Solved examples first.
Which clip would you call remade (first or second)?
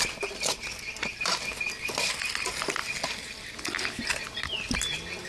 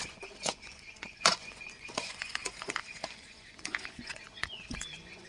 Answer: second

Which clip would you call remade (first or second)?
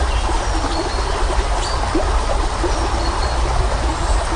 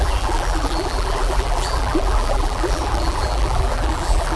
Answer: second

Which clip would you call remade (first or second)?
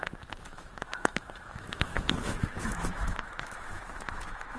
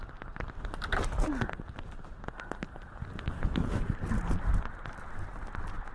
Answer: first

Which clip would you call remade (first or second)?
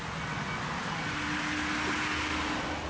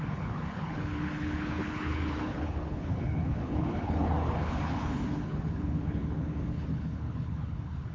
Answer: second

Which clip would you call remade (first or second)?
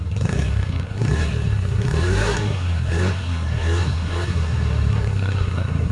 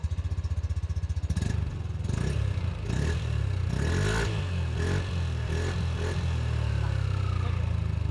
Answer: first